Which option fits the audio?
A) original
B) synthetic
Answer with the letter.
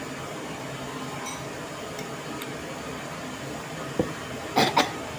A